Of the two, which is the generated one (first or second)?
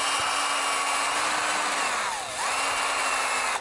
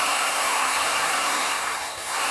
second